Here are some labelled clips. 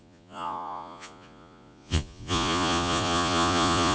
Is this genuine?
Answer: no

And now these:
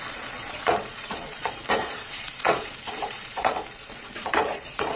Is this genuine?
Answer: no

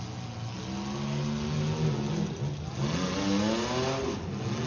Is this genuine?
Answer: yes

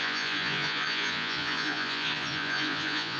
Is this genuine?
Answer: no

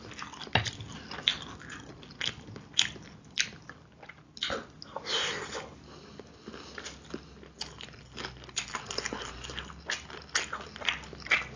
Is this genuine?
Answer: yes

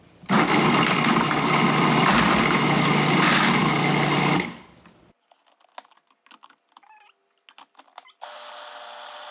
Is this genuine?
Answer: yes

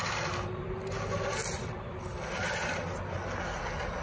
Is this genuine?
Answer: yes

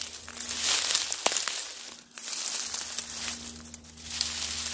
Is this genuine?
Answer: yes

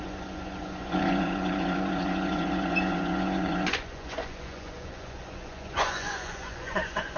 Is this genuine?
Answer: no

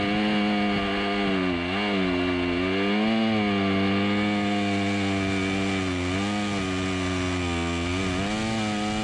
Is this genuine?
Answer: yes